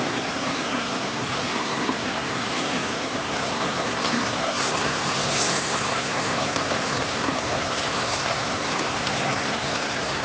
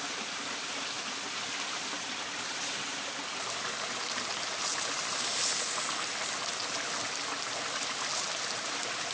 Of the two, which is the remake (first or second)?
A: first